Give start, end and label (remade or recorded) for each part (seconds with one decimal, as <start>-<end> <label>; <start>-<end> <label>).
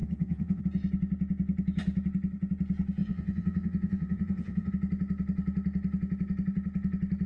0.0-0.6 remade; 0.6-3.0 recorded; 3.0-4.7 remade; 4.7-7.3 recorded